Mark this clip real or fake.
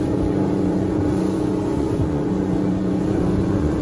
fake